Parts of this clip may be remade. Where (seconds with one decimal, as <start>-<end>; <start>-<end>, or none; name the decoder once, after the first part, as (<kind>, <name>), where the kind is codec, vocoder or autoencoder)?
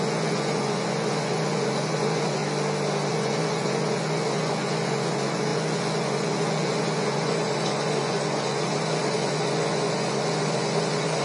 0.0-2.4 (vocoder, Vocos); 3.1-11.2